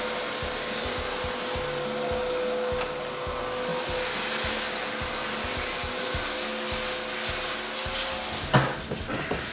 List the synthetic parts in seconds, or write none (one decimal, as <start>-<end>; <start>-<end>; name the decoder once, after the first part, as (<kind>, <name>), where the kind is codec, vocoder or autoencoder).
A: none